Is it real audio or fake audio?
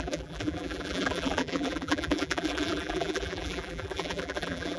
fake